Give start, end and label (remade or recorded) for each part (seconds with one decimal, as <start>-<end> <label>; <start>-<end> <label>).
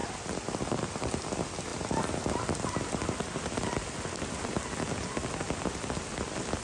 0.0-6.6 recorded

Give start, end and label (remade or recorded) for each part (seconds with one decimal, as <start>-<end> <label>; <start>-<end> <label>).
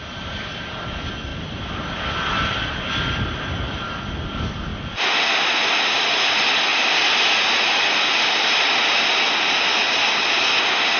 0.0-1.3 recorded; 1.3-2.9 remade; 2.9-4.7 recorded; 4.7-5.6 remade; 5.6-11.0 recorded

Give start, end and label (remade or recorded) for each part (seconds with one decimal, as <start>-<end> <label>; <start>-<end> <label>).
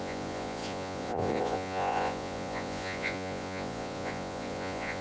0.0-5.0 remade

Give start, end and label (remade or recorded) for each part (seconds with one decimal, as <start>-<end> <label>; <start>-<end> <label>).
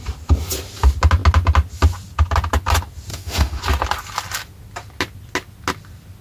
0.0-3.1 recorded; 3.1-3.6 remade; 3.6-6.2 recorded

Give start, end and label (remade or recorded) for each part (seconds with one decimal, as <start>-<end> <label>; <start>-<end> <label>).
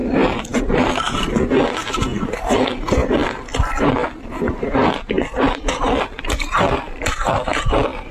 0.0-8.1 recorded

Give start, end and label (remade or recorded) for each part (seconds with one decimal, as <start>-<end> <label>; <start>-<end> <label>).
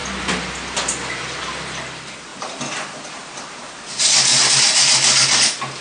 0.0-5.8 recorded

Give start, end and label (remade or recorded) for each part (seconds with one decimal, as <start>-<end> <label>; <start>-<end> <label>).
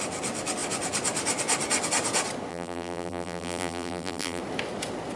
0.0-2.5 recorded; 2.5-4.4 remade; 4.4-5.2 recorded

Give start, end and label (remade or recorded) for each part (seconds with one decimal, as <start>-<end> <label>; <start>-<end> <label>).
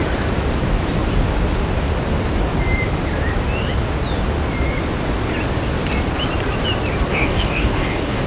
0.0-7.1 recorded; 7.1-8.3 remade